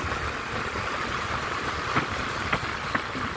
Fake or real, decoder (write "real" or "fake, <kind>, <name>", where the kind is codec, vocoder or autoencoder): real